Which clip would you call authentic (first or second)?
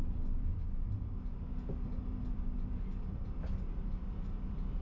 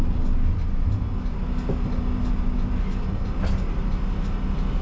second